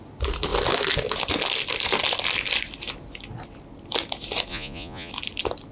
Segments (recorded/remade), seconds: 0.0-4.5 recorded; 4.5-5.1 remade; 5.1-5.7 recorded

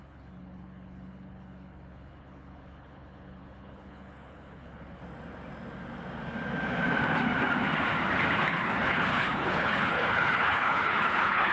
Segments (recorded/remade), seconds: 0.0-5.0 remade; 5.0-8.5 recorded; 8.5-11.5 remade

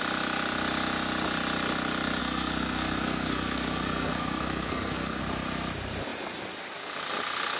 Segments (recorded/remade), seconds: 0.0-2.2 recorded; 2.2-5.2 remade; 5.2-7.6 recorded

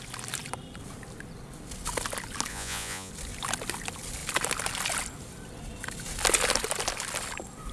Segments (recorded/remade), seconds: 0.0-2.5 recorded; 2.5-3.1 remade; 3.1-7.7 recorded

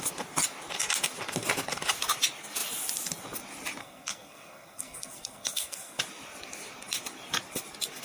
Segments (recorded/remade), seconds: 0.0-3.8 recorded; 3.8-6.0 remade; 6.0-8.0 recorded

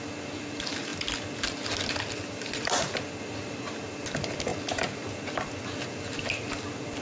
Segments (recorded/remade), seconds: 0.0-7.0 recorded